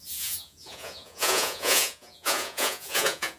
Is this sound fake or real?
fake